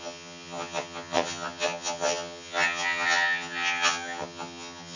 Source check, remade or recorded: remade